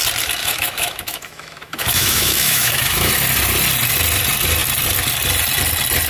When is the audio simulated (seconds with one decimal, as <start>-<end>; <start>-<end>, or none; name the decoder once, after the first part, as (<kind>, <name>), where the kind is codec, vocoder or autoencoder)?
0.4-3.1 (autoencoder, DAC-VAE)